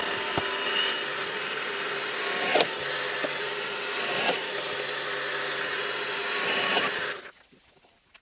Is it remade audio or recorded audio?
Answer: recorded